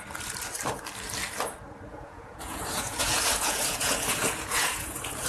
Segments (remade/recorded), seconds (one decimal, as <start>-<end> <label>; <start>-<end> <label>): 0.0-1.9 recorded; 1.9-5.3 remade